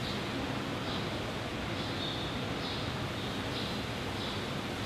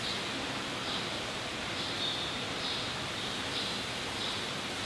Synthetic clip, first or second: second